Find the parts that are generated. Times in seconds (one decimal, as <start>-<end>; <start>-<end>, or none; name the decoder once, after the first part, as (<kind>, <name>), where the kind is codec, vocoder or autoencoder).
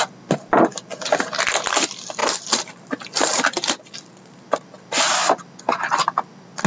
2.2-2.9 (vocoder, BigVGAN v2)